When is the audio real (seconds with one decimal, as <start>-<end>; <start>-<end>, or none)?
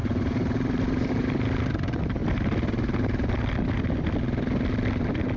2.2-5.4